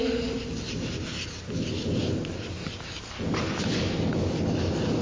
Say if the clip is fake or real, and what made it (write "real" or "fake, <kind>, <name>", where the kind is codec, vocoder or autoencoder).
real